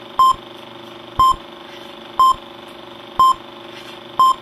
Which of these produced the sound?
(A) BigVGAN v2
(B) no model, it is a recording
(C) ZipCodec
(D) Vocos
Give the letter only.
B